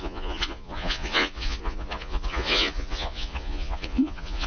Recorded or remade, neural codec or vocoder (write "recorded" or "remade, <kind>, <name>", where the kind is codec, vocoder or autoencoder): remade, vocoder, Vocos